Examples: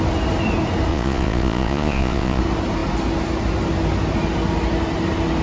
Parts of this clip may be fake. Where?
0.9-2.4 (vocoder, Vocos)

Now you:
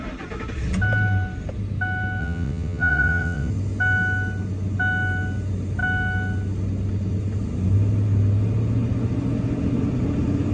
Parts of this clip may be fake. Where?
2.2-3.5 (vocoder, WaveNeXt)

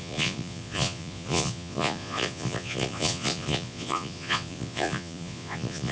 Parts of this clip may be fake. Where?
0.0-5.9 (vocoder, Vocos)

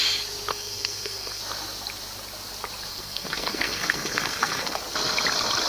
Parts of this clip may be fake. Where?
0.5-1.4 (codec, SNAC); 2.9-4.8

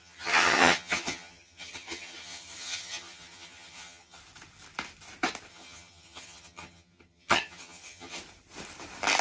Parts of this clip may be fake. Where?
0.0-4.2 (vocoder, HiFi-GAN); 5.5-8.2

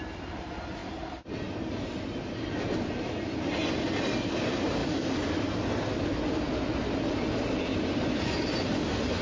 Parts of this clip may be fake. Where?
7.7-8.3 (vocoder, BigVGAN v2)

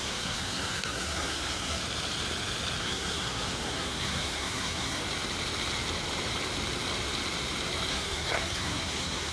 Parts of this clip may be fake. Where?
0.0-1.8 (codec, SNAC); 2.8-5.0; 7.9-9.3

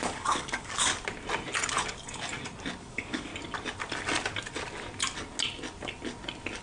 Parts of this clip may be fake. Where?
0.0-0.9 (codec, DAC); 2.8-3.3